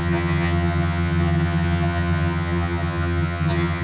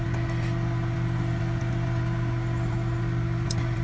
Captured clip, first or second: second